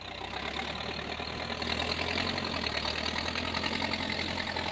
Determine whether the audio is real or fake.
real